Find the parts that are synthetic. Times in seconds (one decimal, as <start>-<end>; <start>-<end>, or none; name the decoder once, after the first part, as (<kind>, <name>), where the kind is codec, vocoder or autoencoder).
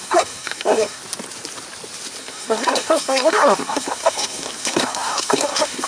0.0-1.0 (codec, SNAC); 2.2-5.9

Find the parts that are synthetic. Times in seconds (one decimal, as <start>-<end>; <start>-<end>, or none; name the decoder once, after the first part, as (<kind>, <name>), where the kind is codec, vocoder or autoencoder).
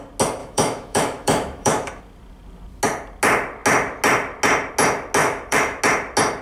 0.4-2.0 (autoencoder, DAC-VAE); 5.2-5.8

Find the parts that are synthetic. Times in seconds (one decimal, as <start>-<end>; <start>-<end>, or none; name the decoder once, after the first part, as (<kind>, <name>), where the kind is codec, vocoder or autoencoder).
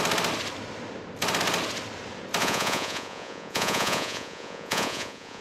2.4-5.4 (vocoder, Vocos)